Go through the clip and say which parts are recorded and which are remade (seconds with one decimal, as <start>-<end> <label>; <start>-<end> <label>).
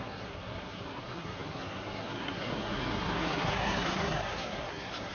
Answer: 0.0-5.1 remade